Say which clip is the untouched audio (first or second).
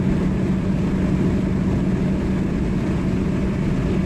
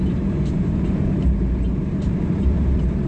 first